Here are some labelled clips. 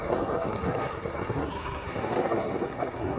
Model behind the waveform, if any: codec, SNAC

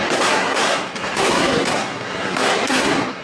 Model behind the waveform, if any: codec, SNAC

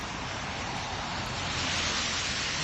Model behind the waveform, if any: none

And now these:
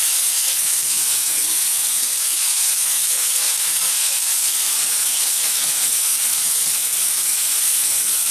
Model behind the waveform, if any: codec, SNAC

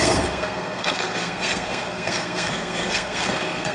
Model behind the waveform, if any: codec, SNAC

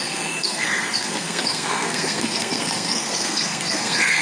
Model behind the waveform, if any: codec, SNAC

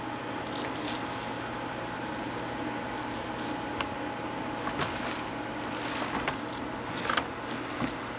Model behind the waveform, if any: none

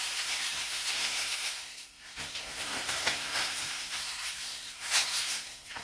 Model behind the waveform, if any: codec, SNAC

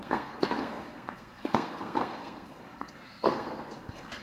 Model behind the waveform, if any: codec, SNAC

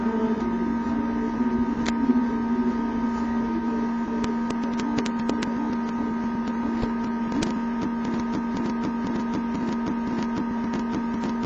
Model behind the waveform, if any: none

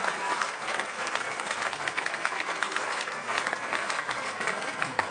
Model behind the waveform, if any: codec, SNAC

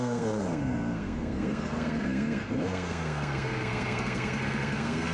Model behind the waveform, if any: codec, SNAC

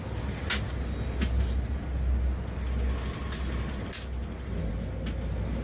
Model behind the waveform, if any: none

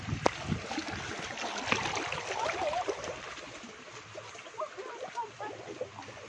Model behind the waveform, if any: none